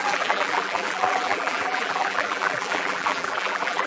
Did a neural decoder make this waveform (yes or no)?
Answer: yes